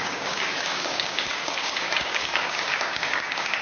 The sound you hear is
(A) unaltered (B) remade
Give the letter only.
B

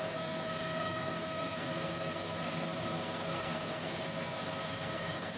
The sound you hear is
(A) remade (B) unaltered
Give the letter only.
A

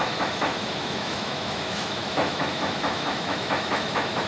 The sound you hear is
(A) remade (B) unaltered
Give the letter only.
A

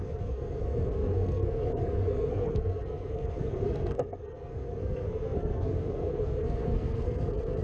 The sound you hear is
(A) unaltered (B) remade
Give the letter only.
B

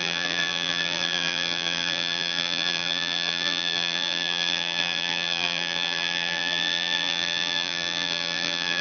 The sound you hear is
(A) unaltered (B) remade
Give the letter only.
B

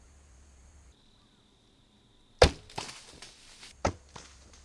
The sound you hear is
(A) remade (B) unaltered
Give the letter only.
B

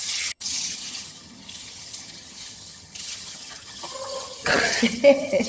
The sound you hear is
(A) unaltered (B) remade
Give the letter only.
B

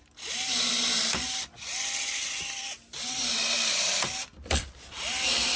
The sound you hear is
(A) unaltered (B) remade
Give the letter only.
B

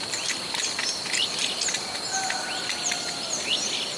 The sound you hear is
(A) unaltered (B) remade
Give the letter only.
A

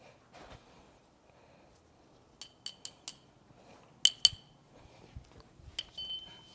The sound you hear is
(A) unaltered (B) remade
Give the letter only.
A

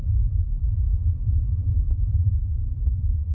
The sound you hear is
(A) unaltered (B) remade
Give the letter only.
B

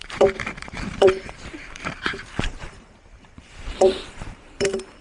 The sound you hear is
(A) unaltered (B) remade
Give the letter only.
B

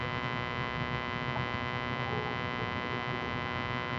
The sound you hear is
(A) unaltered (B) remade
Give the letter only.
A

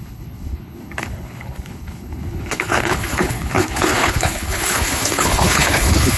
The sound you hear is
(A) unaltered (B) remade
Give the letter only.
B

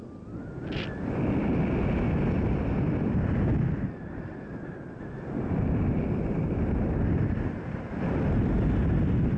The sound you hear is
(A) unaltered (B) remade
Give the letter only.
A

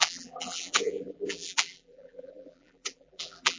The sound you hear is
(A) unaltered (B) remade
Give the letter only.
B